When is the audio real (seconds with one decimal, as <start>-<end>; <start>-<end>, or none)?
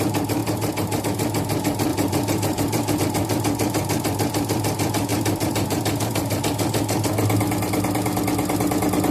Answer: 0.0-0.4; 1.0-1.9; 3.0-5.1; 6.4-9.1